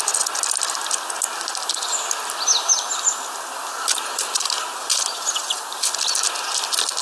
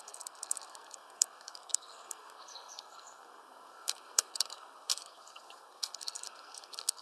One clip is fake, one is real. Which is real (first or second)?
first